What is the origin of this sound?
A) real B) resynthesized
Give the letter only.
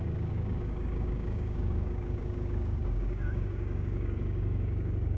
B